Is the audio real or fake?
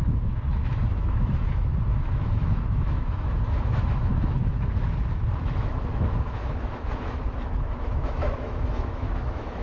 fake